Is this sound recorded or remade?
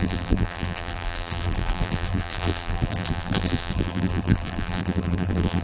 remade